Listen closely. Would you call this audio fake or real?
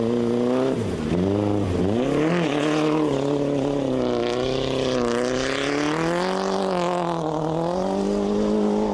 real